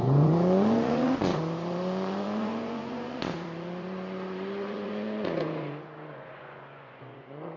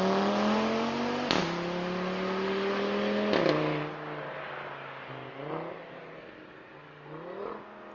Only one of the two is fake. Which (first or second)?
first